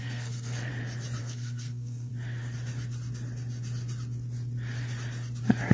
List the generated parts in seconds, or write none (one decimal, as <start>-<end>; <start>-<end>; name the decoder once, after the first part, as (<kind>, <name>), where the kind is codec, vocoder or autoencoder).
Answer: 0.0-0.7 (codec, SNAC); 1.2-2.1

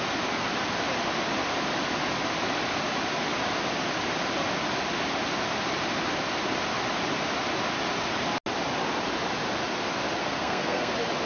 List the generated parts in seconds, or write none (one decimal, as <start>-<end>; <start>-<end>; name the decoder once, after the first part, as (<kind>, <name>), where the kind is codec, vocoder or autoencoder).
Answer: 10.2-10.9 (codec, SNAC)